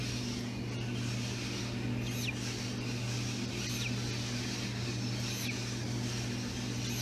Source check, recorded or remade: recorded